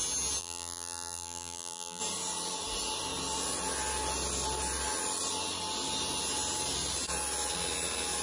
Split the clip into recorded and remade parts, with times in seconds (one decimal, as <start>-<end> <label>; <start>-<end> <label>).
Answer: 0.0-0.4 recorded; 0.4-2.0 remade; 2.0-8.2 recorded

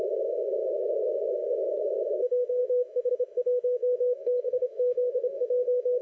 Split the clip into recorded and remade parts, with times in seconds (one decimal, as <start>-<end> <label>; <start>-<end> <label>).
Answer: 0.0-0.7 recorded; 0.7-1.3 remade; 1.3-2.6 recorded; 2.6-3.1 remade; 3.1-3.8 recorded; 3.8-6.0 remade

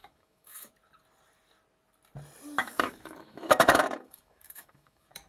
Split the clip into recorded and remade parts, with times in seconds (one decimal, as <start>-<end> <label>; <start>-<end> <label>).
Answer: 0.0-0.7 remade; 0.7-2.6 recorded; 2.6-5.3 remade

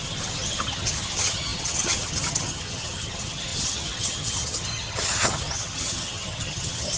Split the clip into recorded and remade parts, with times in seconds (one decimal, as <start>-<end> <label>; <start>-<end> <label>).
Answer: 0.0-7.0 remade

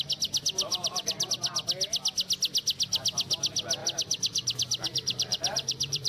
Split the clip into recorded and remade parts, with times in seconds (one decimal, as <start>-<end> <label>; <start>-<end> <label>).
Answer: 0.0-0.7 recorded; 0.7-1.3 remade; 1.3-3.8 recorded; 3.8-6.1 remade

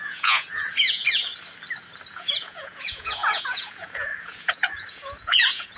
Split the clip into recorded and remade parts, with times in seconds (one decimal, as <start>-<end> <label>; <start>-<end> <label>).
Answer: 0.0-1.3 remade; 1.3-2.1 recorded; 2.1-5.8 remade

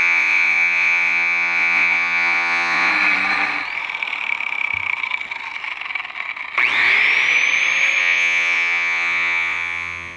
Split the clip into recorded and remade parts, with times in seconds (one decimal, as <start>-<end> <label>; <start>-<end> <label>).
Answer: 0.0-2.9 remade; 2.9-8.0 recorded; 8.0-10.2 remade

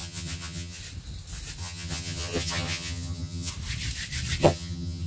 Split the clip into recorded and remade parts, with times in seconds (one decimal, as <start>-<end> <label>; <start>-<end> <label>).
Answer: 0.0-0.8 remade; 0.8-1.6 recorded; 1.6-3.5 remade; 3.5-4.4 recorded; 4.4-5.1 remade